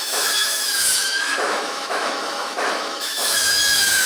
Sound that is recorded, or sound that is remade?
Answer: remade